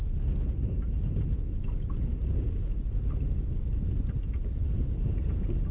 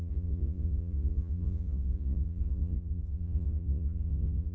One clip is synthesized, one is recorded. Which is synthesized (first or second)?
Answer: second